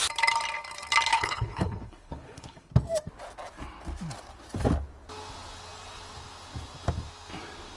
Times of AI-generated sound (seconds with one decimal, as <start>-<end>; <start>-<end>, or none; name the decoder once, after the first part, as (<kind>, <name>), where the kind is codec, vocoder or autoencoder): 1.1-2.7 (codec, HILCodec)